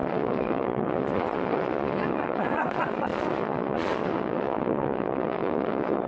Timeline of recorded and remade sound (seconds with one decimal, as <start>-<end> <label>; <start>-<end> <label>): 0.0-6.1 remade